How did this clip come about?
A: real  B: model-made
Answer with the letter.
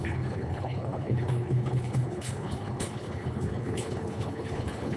B